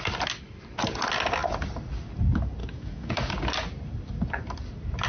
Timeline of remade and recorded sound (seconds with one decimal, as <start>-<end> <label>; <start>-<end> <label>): 0.0-2.6 recorded; 2.6-3.3 remade; 3.3-5.1 recorded